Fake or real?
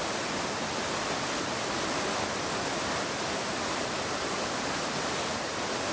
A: real